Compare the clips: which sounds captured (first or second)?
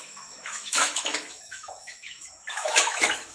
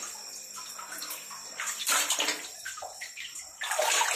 second